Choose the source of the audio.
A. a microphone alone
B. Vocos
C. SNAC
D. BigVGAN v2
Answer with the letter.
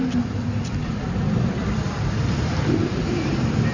D